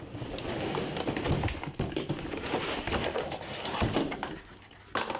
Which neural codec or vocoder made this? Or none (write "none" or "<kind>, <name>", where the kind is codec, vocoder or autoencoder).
none